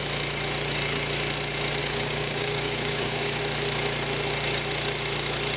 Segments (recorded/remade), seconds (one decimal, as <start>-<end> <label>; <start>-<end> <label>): 0.0-1.8 recorded; 1.8-3.4 remade; 3.4-5.6 recorded